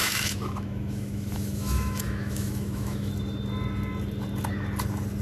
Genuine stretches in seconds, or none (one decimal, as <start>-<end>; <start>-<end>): 3.1-5.2